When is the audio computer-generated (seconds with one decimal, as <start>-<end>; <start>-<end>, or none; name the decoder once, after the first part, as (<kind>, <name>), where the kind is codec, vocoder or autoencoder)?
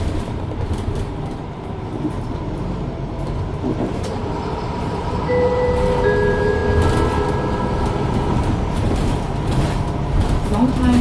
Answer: 0.0-6.6 (vocoder, BigVGAN v2); 7.3-11.0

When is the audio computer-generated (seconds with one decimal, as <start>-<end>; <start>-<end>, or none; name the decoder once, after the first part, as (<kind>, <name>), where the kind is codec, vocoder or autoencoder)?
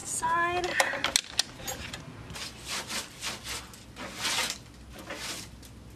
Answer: none